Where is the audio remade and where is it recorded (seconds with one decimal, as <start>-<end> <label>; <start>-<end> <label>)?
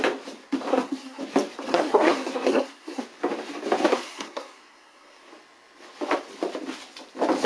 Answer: 0.0-0.7 recorded; 0.7-1.2 remade; 1.2-1.7 recorded; 1.7-3.0 remade; 3.0-3.9 recorded; 3.9-5.3 remade; 5.3-7.5 recorded